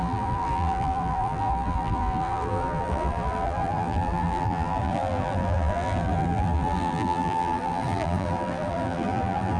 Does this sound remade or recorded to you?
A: remade